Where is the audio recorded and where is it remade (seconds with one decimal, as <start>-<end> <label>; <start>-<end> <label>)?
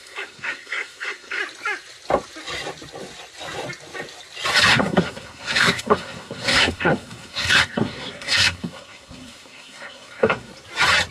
0.0-1.4 remade; 1.4-4.7 recorded; 4.7-10.5 remade; 10.5-11.1 recorded